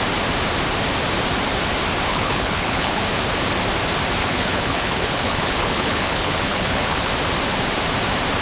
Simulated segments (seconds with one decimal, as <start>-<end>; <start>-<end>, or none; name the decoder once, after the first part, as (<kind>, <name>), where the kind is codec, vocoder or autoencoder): 2.1-3.0 (codec, HILCodec); 4.2-7.1